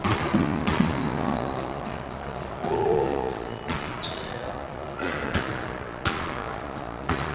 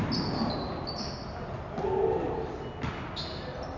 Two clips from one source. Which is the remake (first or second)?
first